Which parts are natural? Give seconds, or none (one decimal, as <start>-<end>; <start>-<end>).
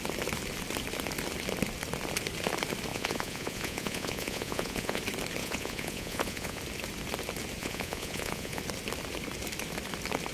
0.0-2.9; 5.0-5.4; 6.6-7.6; 8.6-10.3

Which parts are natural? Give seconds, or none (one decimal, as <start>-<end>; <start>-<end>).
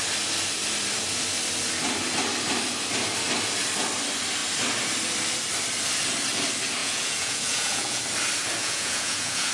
0.0-6.8; 8.0-8.6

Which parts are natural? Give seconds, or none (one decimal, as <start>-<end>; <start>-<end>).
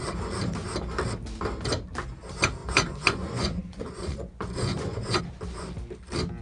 0.0-2.6; 5.2-6.4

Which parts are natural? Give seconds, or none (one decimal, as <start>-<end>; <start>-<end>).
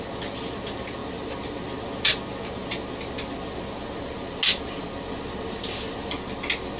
0.0-6.8